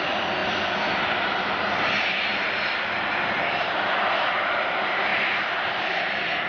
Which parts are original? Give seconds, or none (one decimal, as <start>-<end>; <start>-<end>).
0.0-6.5